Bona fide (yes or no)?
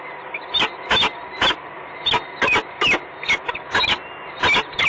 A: yes